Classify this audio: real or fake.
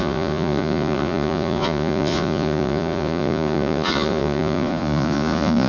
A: fake